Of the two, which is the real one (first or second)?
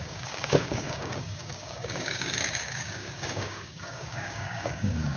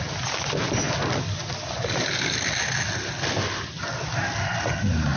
second